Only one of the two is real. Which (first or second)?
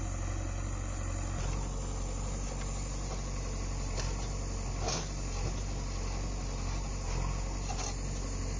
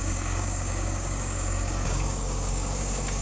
first